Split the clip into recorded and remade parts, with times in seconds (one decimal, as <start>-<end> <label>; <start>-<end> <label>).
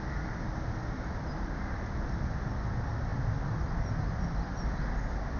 0.0-5.4 recorded